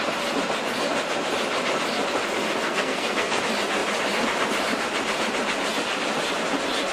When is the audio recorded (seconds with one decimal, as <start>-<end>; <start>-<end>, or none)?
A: 0.0-2.6; 3.4-6.9